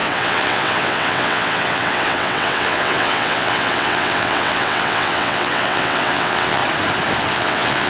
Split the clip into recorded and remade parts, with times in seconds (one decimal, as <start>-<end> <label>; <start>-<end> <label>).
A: 0.0-6.6 remade; 6.6-7.3 recorded; 7.3-7.9 remade